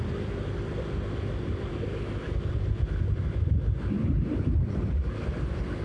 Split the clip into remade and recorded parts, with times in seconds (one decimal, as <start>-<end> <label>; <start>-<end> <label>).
0.0-5.8 recorded